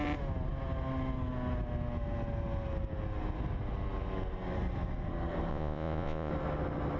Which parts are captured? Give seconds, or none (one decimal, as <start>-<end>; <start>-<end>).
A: 0.0-5.5; 6.3-7.0